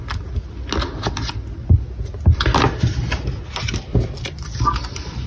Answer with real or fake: real